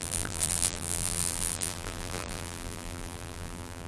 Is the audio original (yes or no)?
no